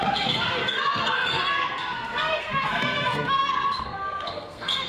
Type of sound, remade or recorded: remade